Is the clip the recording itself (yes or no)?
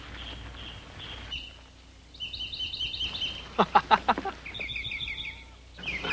yes